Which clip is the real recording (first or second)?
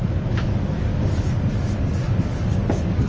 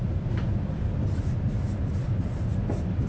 second